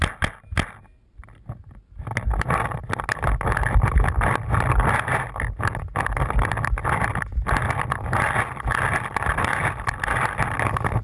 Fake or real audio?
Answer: real